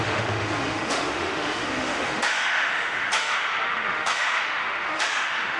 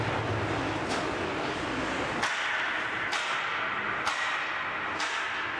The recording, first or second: second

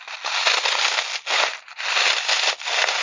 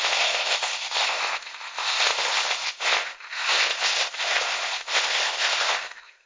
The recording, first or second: first